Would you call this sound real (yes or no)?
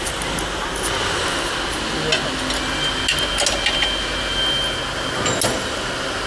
yes